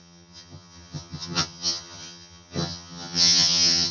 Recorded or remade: remade